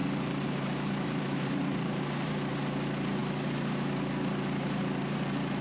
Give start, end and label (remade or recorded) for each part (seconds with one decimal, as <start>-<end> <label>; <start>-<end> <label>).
0.0-2.5 remade; 2.5-5.6 recorded